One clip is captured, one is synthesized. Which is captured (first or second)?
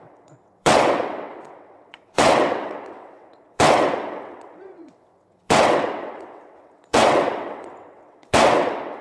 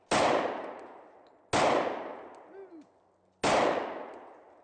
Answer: second